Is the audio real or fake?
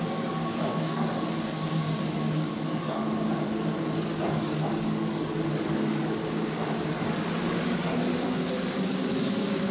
fake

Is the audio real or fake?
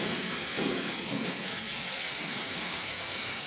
fake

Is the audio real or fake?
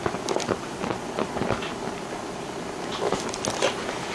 real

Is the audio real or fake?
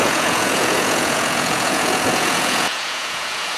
fake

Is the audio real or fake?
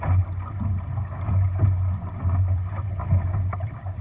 real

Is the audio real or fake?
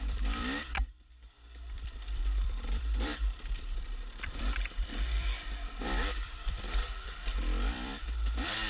fake